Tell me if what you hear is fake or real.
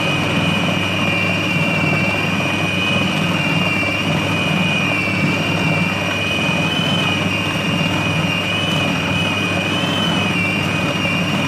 real